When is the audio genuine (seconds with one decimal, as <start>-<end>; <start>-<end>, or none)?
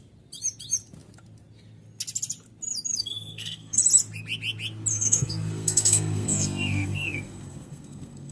0.0-3.0; 3.8-4.9